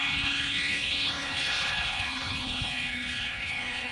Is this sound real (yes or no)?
no